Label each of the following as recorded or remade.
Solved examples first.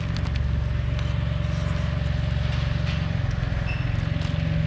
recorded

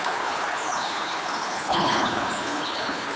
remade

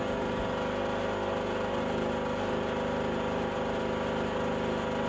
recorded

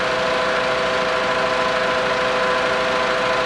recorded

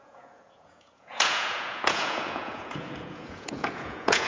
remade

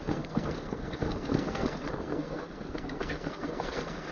remade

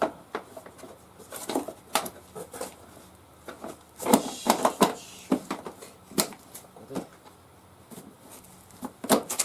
recorded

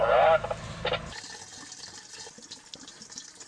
recorded